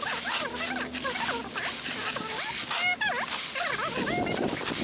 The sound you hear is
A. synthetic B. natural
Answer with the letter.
B